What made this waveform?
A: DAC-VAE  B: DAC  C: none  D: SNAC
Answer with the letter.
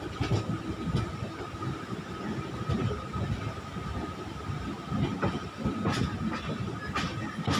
C